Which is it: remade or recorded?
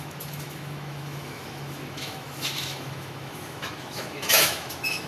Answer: remade